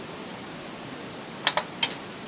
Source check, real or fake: real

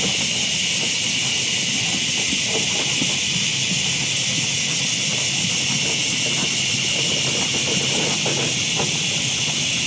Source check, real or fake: real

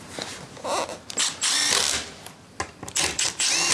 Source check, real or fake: real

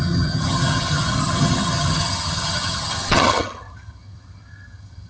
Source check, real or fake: fake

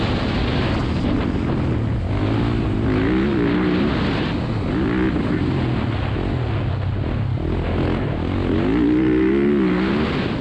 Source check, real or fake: real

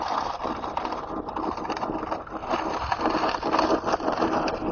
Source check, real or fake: fake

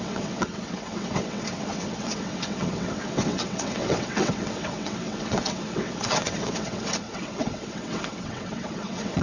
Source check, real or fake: fake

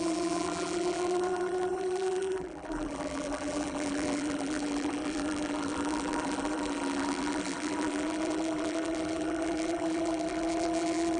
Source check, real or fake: fake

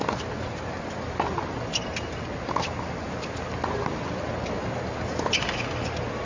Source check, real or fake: real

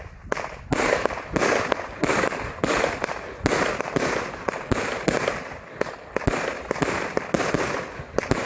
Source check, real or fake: real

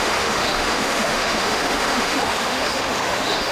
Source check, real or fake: fake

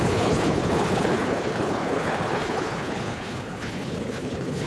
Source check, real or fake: fake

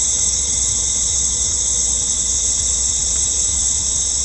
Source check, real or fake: fake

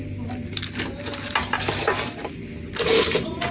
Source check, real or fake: real